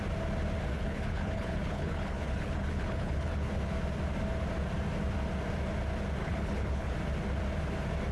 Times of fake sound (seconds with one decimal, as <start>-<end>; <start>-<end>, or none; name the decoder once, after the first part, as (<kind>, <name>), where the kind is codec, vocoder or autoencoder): 0.7-3.5 (codec, HILCodec); 6.2-6.9